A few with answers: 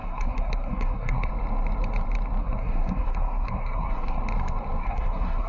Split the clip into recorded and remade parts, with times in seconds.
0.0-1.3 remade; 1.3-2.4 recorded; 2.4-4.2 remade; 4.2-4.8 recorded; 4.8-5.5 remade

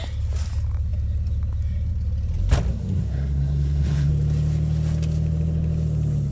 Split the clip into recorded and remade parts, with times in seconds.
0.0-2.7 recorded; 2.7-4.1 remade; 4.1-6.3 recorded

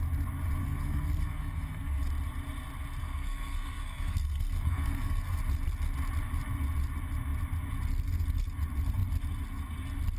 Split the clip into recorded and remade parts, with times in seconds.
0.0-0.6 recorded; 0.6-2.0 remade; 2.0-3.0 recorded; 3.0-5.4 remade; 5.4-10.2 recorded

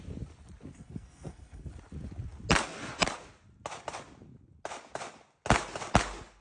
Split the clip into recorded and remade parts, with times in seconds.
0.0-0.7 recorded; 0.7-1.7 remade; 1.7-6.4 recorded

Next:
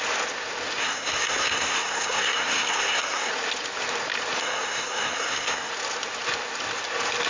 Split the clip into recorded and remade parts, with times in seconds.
0.0-0.8 recorded; 0.8-3.3 remade; 3.3-4.4 recorded; 4.4-5.7 remade; 5.7-7.3 recorded

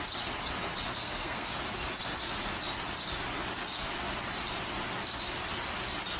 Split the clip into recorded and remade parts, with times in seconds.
0.0-0.9 recorded; 0.9-1.5 remade; 1.5-6.2 recorded